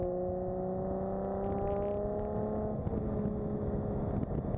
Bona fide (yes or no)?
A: yes